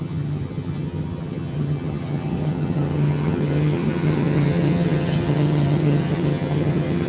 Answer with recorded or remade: remade